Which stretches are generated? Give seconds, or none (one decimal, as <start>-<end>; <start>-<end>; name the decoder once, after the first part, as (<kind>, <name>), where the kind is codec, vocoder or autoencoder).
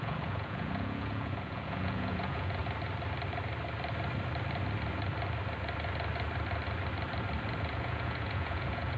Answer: 0.0-2.6 (vocoder, Vocos); 7.7-9.0